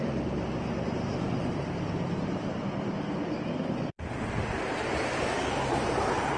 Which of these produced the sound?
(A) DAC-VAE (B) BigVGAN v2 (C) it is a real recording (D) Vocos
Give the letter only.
B